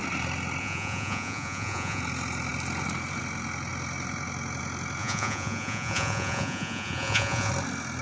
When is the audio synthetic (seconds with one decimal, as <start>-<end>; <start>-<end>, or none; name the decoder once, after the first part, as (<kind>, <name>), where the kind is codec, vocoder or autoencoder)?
0.6-2.0 (vocoder, Vocos); 5.0-7.5